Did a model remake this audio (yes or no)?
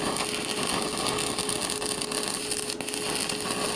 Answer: no